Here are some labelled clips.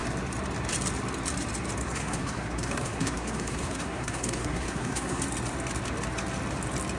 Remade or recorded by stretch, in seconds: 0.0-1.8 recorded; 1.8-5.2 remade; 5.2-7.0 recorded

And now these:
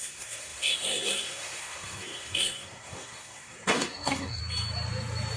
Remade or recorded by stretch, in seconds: 0.0-4.4 remade; 4.4-5.4 recorded

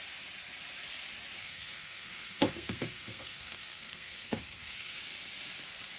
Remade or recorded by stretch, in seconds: 0.0-1.4 recorded; 1.4-5.0 remade; 5.0-6.0 recorded